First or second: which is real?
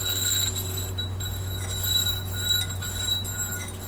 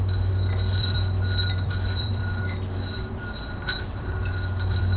first